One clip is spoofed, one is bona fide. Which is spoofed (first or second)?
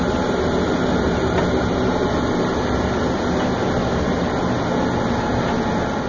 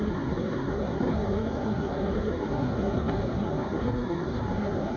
second